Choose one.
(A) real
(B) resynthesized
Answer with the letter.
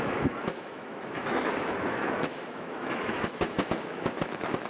B